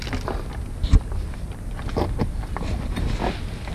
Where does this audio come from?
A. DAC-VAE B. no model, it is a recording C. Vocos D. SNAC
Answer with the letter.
B